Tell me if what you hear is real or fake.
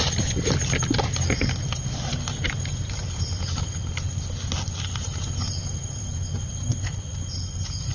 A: real